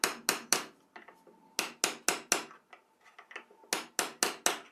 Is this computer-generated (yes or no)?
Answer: no